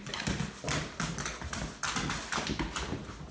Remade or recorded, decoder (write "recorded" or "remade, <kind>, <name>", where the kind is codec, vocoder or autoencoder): recorded